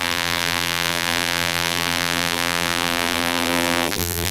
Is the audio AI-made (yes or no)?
yes